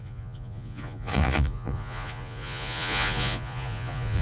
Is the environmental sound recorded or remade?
remade